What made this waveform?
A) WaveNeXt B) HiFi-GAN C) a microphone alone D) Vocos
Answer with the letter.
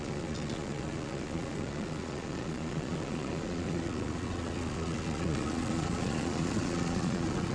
D